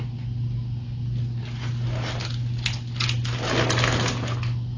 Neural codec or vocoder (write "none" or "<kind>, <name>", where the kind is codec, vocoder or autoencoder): none